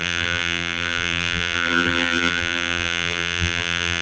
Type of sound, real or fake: fake